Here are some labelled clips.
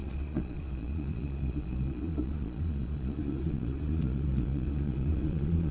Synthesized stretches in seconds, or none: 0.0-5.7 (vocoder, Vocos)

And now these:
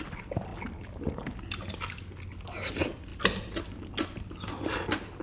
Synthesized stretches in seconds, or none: 3.1-3.8 (vocoder, BigVGAN v2)